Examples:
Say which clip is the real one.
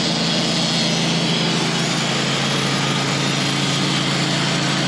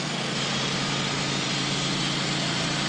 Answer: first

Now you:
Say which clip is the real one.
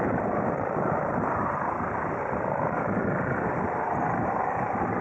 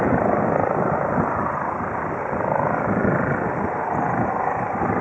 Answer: second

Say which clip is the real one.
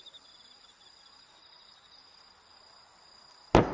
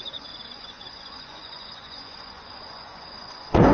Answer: first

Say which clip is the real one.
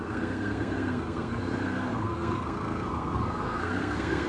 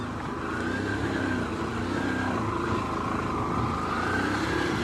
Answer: second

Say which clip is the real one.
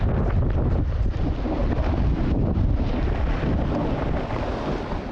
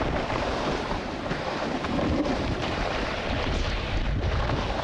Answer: first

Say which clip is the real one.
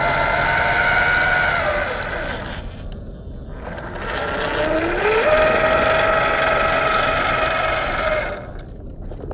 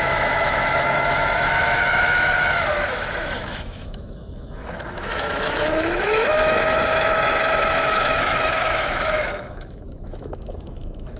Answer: first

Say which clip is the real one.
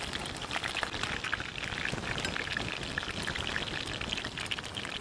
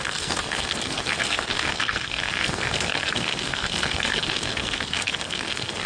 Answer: first